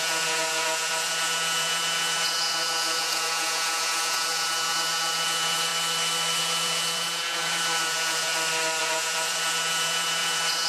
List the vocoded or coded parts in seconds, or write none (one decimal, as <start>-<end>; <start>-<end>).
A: 0.0-5.7; 6.4-8.3; 8.8-10.7